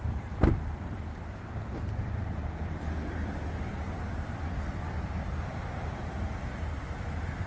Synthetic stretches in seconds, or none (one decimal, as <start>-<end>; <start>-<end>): 0.0-2.4; 3.6-7.5